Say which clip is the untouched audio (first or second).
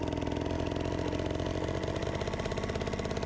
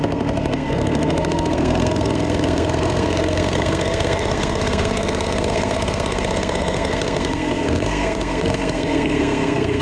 first